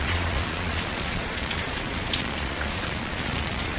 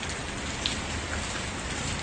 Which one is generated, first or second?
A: first